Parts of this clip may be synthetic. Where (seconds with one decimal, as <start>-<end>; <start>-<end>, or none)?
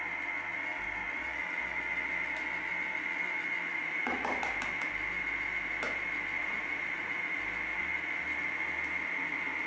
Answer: 3.7-4.4; 6.4-7.2